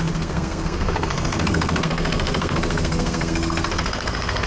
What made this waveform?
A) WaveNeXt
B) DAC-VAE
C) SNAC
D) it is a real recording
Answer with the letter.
C